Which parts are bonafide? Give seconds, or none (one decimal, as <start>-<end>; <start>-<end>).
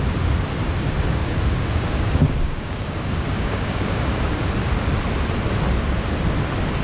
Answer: 0.0-1.2; 4.5-6.8